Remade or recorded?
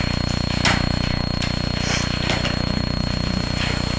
recorded